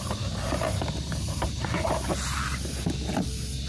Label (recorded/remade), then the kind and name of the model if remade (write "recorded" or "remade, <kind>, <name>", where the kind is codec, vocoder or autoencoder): remade, vocoder, BigVGAN v2